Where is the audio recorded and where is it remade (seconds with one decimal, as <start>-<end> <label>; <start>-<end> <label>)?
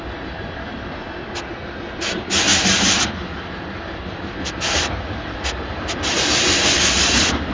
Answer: 0.0-2.5 recorded; 2.5-3.1 remade; 3.1-7.5 recorded